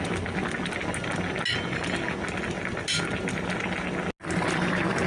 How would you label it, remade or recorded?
recorded